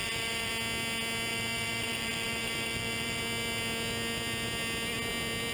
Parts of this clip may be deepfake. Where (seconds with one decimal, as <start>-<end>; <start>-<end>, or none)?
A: 0.0-0.5; 1.3-3.2